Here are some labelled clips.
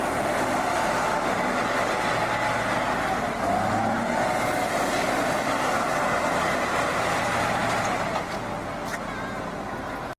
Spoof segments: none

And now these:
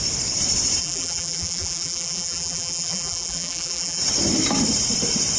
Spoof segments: 0.8-4.0 (vocoder, BigVGAN v2)

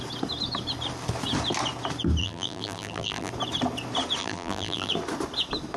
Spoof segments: 2.2-3.3 (vocoder, BigVGAN v2); 4.2-4.9

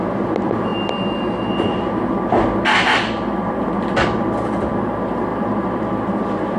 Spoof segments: 5.3-6.6 (vocoder, BigVGAN v2)

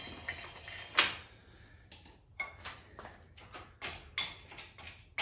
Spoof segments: none

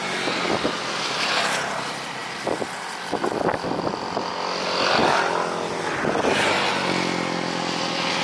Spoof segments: none

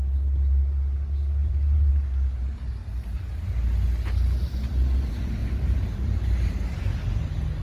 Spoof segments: 1.4-1.9 (vocoder, BigVGAN v2); 5.4-6.7

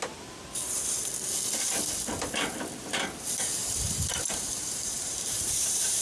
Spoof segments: 3.6-6.0 (vocoder, BigVGAN v2)